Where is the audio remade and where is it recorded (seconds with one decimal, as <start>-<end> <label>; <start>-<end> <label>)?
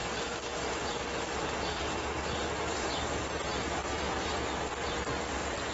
0.0-3.4 remade; 3.4-4.3 recorded; 4.3-5.3 remade; 5.3-5.7 recorded